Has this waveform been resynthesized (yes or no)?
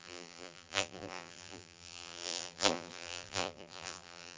yes